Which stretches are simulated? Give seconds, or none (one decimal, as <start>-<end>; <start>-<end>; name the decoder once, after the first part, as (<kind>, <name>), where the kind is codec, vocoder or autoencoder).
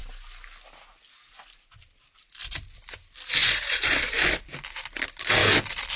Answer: 3.4-4.3 (vocoder, Vocos)